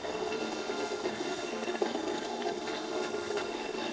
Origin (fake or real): fake